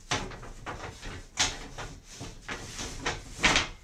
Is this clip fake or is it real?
real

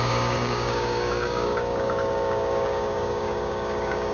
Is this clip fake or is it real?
fake